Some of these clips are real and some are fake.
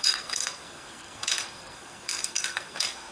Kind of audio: fake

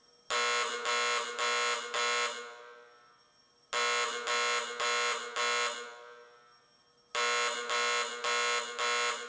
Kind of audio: real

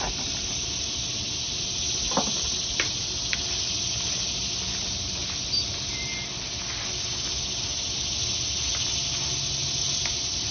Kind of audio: real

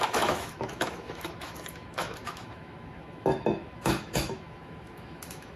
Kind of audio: fake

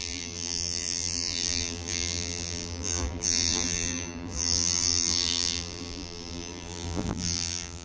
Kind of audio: fake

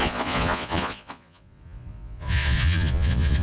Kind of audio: fake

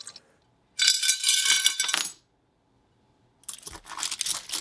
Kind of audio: real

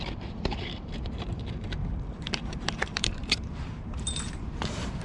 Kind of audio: fake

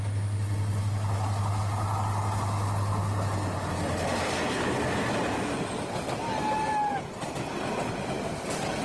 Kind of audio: real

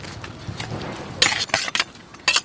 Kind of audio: real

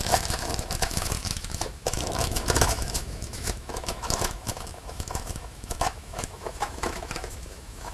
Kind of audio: fake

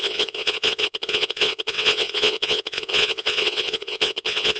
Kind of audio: fake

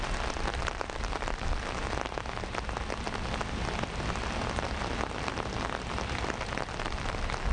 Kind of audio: real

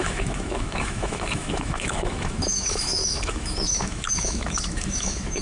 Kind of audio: fake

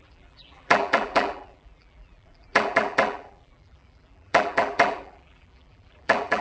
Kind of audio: fake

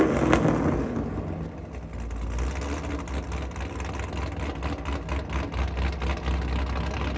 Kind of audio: real